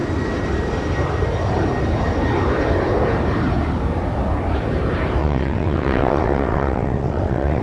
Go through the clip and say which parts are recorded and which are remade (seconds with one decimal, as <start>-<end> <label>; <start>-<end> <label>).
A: 0.0-5.2 recorded; 5.2-7.6 remade